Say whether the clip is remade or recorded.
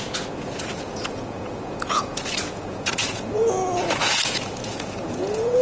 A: remade